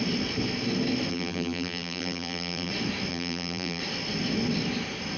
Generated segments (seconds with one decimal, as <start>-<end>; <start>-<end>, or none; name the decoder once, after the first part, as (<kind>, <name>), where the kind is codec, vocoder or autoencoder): 1.1-2.7 (vocoder, BigVGAN v2); 3.1-3.8